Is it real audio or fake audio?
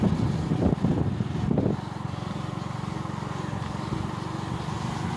real